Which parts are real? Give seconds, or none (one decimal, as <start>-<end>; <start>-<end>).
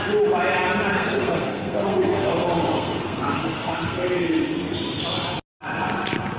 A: 0.0-0.9; 4.7-6.4